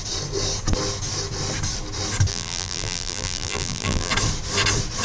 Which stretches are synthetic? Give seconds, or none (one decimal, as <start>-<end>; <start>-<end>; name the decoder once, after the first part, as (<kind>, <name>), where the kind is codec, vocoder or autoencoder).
2.3-4.1 (vocoder, BigVGAN v2)